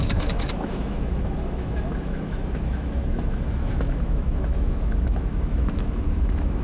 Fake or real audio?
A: fake